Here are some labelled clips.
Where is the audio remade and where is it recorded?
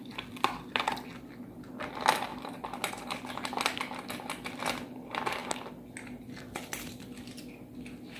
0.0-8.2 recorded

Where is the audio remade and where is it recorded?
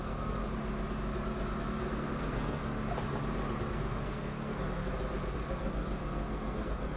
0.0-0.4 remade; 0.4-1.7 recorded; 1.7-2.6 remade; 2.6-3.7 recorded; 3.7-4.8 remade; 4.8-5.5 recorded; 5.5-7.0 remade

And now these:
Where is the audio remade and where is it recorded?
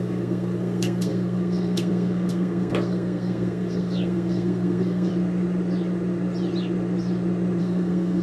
0.0-5.1 remade; 5.1-7.6 recorded; 7.6-8.2 remade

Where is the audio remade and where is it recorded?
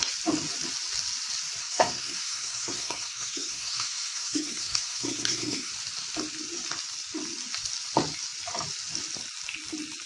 0.0-1.6 recorded; 1.6-5.7 remade; 5.7-10.1 recorded